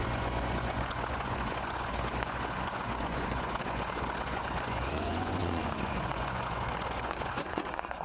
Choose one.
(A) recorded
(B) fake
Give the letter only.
B